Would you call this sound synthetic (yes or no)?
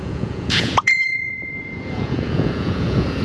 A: yes